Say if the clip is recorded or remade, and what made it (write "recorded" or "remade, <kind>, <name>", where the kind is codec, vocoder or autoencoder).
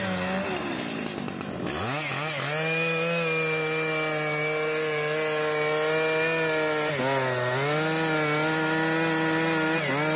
recorded